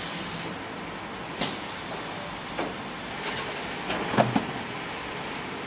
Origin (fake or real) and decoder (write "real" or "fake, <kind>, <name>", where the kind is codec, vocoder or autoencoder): real